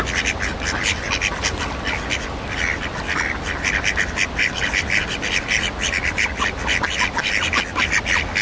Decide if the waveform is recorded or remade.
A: recorded